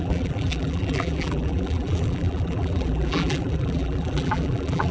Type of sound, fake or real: fake